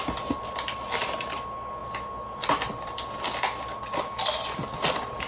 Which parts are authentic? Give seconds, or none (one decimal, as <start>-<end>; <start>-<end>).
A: 0.0-5.3